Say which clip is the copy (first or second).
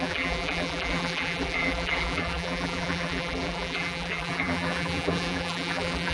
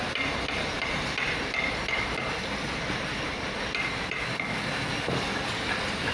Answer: first